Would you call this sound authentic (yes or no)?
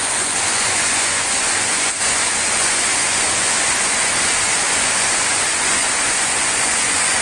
no